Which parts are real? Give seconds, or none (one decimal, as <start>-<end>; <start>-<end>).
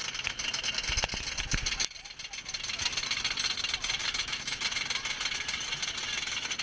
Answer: 0.0-4.0; 4.6-6.6